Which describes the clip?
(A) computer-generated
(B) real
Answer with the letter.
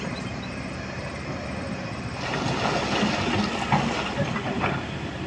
B